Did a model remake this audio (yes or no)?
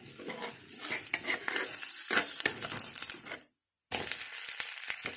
no